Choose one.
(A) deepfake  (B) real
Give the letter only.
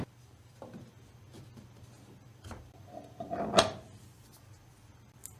B